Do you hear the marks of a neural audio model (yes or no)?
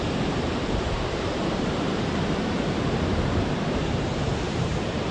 yes